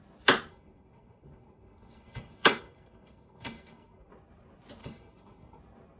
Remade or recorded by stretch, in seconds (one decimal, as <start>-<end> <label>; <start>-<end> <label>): 0.0-0.5 recorded; 0.5-4.1 remade; 4.1-4.8 recorded; 4.8-5.6 remade; 5.6-6.0 recorded